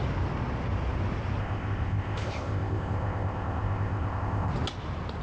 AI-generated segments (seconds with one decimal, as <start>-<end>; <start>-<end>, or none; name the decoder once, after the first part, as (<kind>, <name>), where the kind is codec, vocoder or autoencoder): 1.4-4.5 (codec, ZipCodec)